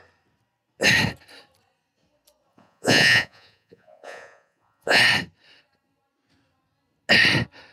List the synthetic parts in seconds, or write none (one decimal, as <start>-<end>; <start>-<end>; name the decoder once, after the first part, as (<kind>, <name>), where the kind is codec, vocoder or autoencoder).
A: 2.5-5.0 (vocoder, Vocos)